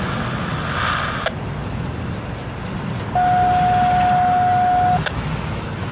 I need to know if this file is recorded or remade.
recorded